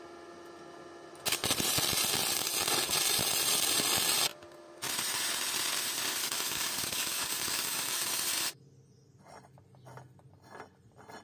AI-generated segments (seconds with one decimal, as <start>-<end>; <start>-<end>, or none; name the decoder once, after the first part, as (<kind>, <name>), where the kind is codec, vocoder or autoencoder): 6.2-8.1 (codec, DAC)